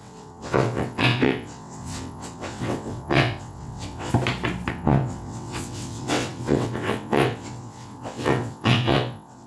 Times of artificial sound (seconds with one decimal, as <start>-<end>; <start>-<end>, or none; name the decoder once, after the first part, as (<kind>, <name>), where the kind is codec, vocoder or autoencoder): 0.0-4.1 (vocoder, WaveNeXt); 4.7-9.5